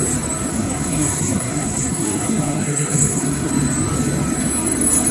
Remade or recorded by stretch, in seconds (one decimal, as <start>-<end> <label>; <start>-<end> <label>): 0.0-0.5 recorded; 0.5-3.5 remade; 3.5-5.1 recorded